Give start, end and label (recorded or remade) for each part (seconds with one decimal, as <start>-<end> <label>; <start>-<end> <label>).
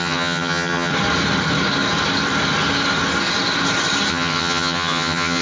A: 0.0-0.9 remade; 0.9-4.1 recorded; 4.1-5.4 remade